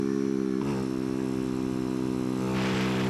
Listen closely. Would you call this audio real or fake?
real